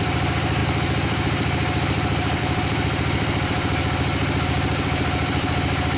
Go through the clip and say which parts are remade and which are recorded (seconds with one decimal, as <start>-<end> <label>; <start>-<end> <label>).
0.0-6.0 recorded